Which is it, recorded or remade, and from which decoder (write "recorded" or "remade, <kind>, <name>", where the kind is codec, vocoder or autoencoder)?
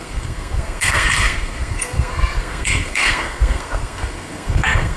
remade, codec, SNAC